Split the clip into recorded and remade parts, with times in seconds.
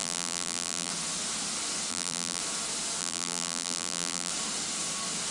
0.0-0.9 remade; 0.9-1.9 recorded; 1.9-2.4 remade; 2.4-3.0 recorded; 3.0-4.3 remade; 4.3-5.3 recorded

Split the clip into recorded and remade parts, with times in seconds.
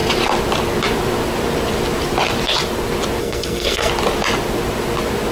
0.0-3.2 recorded; 3.2-3.9 remade; 3.9-5.3 recorded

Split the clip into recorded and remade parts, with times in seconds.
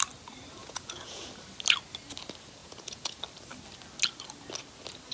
0.0-0.6 recorded; 0.6-1.3 remade; 1.3-2.6 recorded; 2.6-3.2 remade; 3.2-5.1 recorded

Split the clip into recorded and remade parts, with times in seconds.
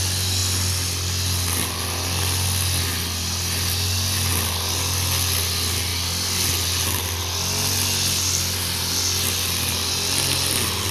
0.0-10.9 recorded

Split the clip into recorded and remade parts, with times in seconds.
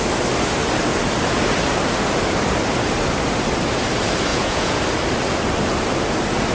0.0-4.3 recorded; 4.3-4.8 remade; 4.8-6.5 recorded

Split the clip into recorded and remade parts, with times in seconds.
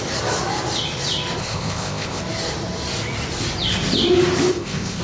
0.0-1.4 recorded; 1.4-2.2 remade; 2.2-4.5 recorded; 4.5-5.0 remade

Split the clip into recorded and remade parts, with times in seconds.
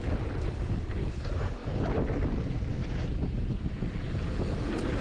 0.0-5.0 recorded